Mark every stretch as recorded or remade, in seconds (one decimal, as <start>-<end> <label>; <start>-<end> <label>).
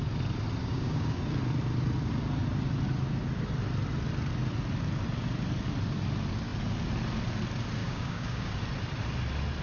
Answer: 0.0-0.6 recorded; 0.6-1.2 remade; 1.2-7.8 recorded; 7.8-8.5 remade; 8.5-9.6 recorded